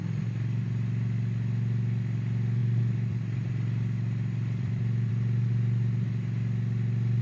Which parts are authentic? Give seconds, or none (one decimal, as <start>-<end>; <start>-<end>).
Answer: 0.0-2.6; 5.1-7.2